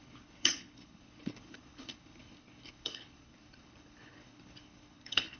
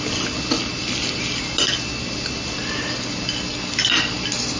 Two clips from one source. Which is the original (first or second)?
second